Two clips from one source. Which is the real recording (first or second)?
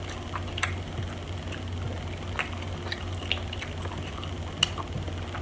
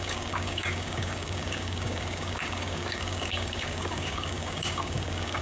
first